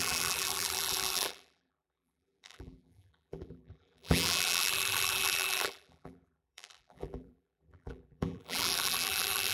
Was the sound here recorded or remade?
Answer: remade